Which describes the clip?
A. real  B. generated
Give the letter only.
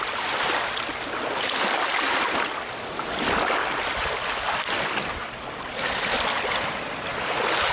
A